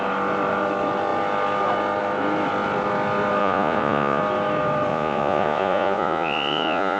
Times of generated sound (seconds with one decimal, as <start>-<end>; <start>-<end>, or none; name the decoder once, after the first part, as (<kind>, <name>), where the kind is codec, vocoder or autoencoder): 3.4-4.2 (vocoder, Vocos); 4.9-7.0